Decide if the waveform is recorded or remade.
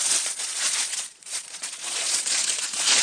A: remade